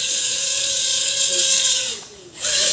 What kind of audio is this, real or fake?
fake